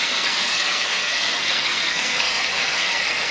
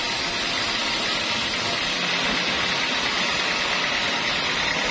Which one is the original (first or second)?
second